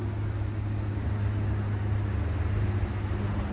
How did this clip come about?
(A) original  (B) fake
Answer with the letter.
A